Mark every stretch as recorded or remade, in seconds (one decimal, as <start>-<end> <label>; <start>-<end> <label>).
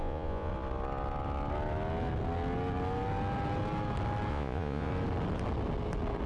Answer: 0.0-0.5 remade; 0.5-4.3 recorded; 4.3-4.9 remade; 4.9-6.3 recorded